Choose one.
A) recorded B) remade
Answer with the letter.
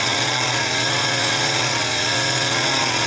B